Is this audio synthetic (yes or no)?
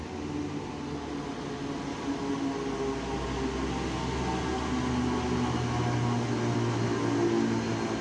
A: no